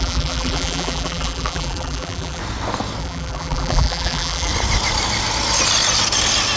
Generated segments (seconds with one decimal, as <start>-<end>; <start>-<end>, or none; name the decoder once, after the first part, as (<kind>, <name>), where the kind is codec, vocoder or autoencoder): 0.0-2.4 (vocoder, BigVGAN v2); 3.0-4.5

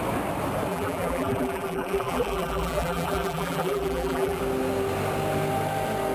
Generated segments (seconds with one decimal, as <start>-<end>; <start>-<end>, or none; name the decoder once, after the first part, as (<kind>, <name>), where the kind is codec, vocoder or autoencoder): 0.7-4.4 (vocoder, BigVGAN v2)

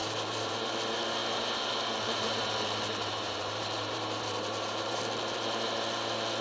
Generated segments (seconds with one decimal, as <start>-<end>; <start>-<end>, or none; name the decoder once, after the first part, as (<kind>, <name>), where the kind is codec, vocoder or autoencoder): 0.0-0.7 (vocoder, BigVGAN v2); 1.2-5.0

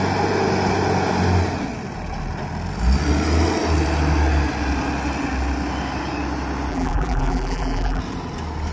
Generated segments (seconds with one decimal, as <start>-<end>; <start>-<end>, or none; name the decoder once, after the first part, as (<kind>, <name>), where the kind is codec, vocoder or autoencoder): 6.7-8.0 (vocoder, BigVGAN v2)

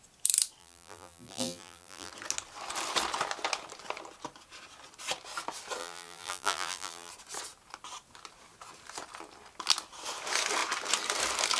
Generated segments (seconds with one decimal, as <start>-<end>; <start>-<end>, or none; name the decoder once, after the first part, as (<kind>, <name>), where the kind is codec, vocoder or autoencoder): 0.6-2.1 (vocoder, BigVGAN v2); 5.8-7.1

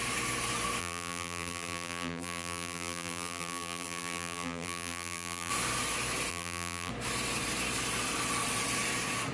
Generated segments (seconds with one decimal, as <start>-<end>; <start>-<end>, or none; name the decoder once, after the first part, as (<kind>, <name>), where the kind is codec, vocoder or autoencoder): 0.8-5.5 (vocoder, BigVGAN v2); 6.3-6.9

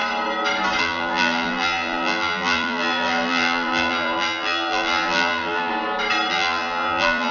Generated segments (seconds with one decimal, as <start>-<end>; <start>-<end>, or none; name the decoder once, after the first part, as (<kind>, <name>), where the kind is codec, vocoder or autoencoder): 0.8-5.7 (vocoder, BigVGAN v2); 6.3-7.3

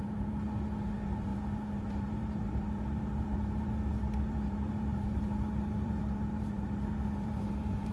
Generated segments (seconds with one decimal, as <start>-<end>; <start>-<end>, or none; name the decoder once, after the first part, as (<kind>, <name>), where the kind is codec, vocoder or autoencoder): 0.0-7.9 (vocoder, BigVGAN v2)